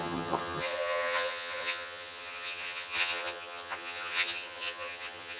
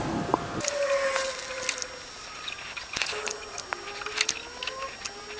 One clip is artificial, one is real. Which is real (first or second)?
second